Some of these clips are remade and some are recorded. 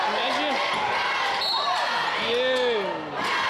recorded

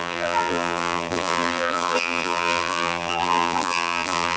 remade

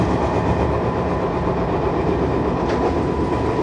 recorded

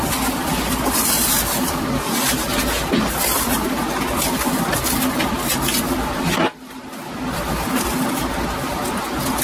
recorded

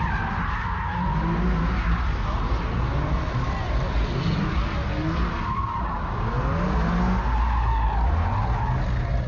recorded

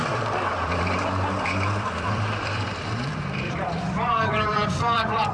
remade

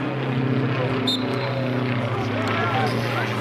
recorded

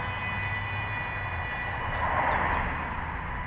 recorded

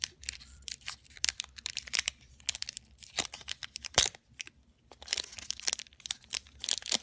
remade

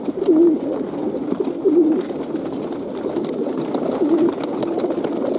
remade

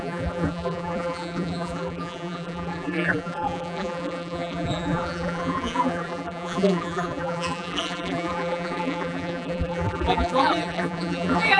remade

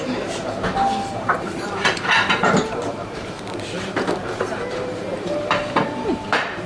remade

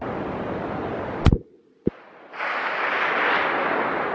recorded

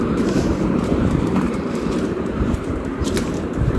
remade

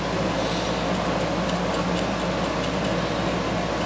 recorded